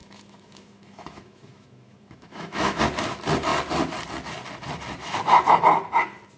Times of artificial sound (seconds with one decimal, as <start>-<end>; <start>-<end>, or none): 0.0-2.8